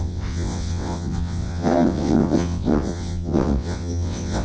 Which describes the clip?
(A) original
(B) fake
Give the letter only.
B